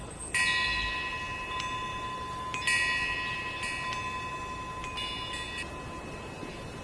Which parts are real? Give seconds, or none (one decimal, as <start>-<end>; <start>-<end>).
0.0-6.8